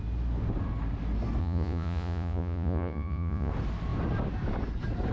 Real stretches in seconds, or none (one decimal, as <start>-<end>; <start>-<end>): 0.0-1.4; 3.5-5.1